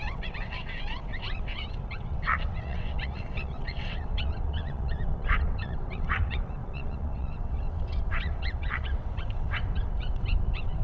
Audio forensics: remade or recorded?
remade